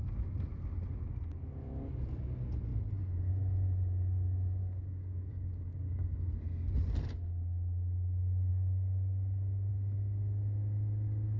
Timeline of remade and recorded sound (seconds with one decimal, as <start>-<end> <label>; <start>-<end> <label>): 0.0-4.6 recorded; 4.6-6.3 remade; 6.3-8.5 recorded; 8.5-9.7 remade; 9.7-11.4 recorded